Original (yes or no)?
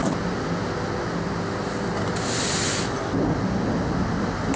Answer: yes